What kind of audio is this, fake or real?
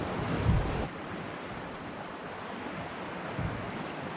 real